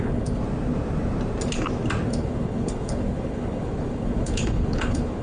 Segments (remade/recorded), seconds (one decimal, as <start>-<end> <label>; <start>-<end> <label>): 0.0-0.4 remade; 0.4-2.1 recorded; 2.1-5.2 remade